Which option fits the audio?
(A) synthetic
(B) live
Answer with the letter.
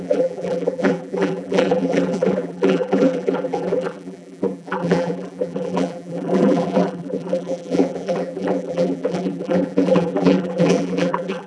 A